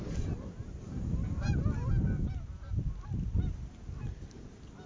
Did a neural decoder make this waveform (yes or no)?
no